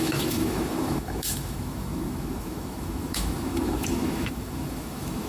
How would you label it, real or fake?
fake